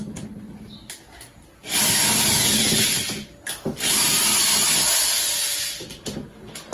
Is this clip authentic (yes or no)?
yes